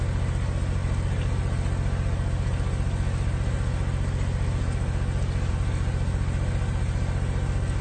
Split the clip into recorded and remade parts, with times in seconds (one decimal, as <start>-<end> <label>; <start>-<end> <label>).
0.0-7.8 recorded